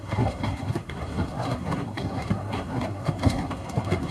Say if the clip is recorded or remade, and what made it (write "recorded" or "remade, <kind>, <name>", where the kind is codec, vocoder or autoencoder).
remade, codec, SNAC